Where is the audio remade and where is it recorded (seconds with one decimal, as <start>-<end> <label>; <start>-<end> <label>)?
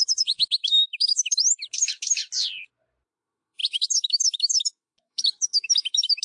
0.0-2.2 remade; 2.2-3.2 recorded; 3.2-6.2 remade